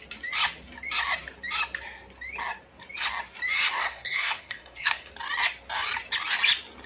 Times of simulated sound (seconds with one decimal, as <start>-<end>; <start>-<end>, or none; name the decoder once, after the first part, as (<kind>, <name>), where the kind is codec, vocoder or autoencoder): 3.8-5.1 (codec, SNAC)